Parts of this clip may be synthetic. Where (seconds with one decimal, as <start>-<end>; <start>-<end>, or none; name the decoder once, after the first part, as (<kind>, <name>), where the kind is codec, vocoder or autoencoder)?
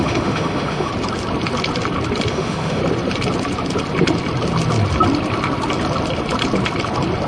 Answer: 0.0-0.9 (autoencoder, DAC-VAE); 2.3-2.8